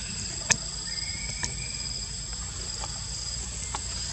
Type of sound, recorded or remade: recorded